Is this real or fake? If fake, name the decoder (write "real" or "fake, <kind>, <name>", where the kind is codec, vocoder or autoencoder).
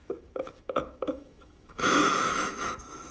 fake, autoencoder, DAC-VAE